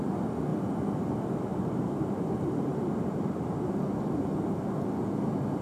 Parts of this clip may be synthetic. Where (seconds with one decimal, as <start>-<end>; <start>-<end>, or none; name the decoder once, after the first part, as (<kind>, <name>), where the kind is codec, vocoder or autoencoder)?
1.5-2.3 (vocoder, BigVGAN v2); 2.7-3.8

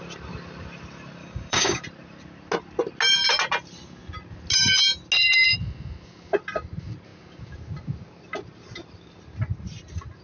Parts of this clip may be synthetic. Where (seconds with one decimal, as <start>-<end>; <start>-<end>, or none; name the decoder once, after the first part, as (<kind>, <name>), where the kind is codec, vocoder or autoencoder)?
1.2-1.8 (codec, DAC)